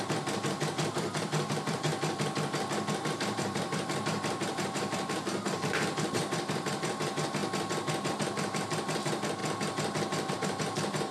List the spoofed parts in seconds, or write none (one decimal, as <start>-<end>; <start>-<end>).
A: 0.0-1.9; 3.1-7.4; 8.1-9.4; 10.3-11.1